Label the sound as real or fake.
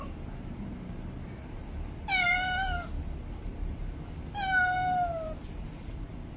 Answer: real